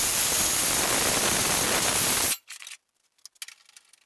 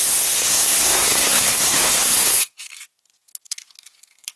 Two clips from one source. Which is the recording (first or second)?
first